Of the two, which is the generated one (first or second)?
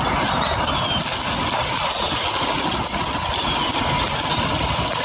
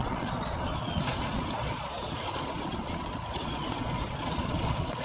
second